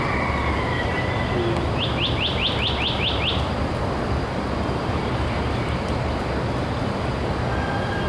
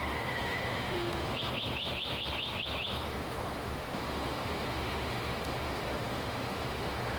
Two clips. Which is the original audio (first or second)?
first